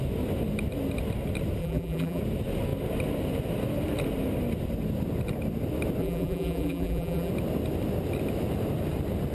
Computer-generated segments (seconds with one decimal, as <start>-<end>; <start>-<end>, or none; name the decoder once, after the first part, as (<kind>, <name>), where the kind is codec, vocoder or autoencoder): 1.6-2.2 (vocoder, BigVGAN v2); 6.0-7.3